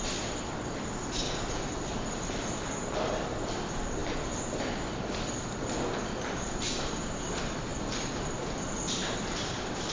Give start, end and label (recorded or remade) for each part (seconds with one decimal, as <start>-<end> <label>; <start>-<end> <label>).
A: 0.0-9.9 recorded